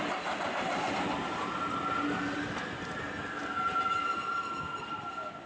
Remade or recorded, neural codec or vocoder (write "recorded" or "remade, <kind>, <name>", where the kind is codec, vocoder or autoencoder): recorded